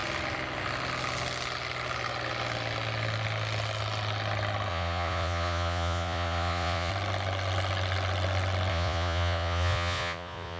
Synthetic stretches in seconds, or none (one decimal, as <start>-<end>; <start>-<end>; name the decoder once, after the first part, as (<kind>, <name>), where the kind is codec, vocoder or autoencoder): 4.7-6.9 (vocoder, Vocos); 8.7-10.6